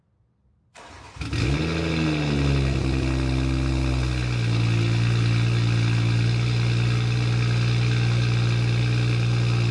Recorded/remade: recorded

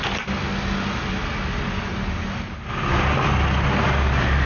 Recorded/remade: recorded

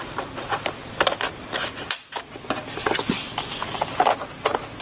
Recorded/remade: recorded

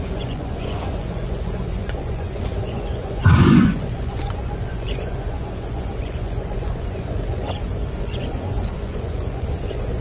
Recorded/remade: remade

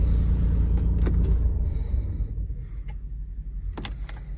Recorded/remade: recorded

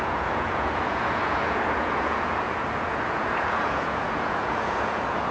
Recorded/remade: remade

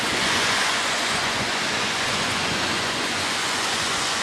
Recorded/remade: remade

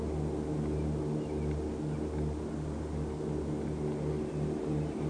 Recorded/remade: recorded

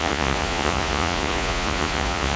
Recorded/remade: remade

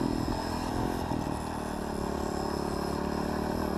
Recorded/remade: recorded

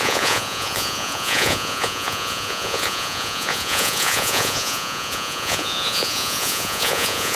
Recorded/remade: remade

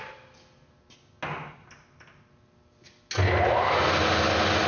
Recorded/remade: recorded